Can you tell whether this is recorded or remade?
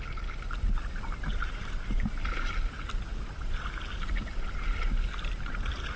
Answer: recorded